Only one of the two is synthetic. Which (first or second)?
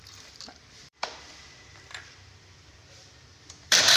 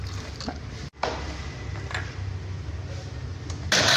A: first